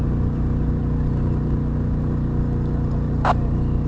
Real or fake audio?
real